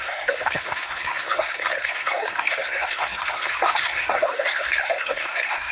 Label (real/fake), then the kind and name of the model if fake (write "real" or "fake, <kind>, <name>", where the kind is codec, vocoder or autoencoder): fake, codec, SNAC